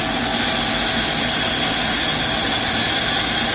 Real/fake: real